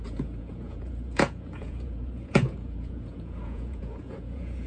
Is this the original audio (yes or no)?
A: no